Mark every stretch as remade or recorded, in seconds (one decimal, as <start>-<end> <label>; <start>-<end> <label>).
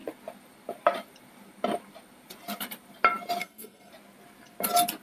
0.0-3.4 recorded; 3.4-3.9 remade; 3.9-5.0 recorded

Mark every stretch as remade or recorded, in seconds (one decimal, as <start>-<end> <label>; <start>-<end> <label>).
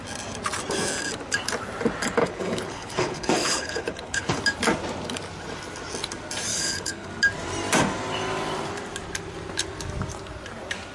0.0-2.2 recorded; 2.2-4.4 remade; 4.4-6.5 recorded; 6.5-7.1 remade; 7.1-10.9 recorded